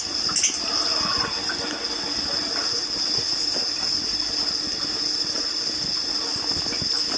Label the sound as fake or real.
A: real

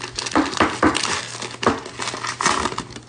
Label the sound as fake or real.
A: real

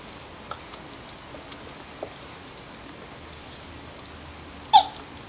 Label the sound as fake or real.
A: real